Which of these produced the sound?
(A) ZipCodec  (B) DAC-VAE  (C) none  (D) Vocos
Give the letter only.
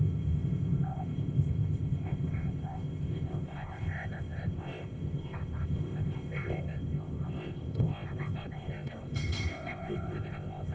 A